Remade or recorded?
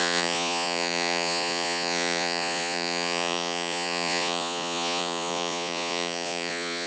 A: remade